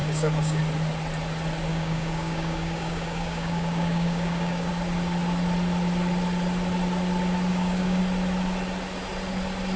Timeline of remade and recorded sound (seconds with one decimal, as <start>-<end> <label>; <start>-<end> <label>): 0.0-0.6 remade; 0.6-1.7 recorded; 1.7-4.7 remade; 4.7-7.5 recorded; 7.5-8.0 remade; 8.0-9.8 recorded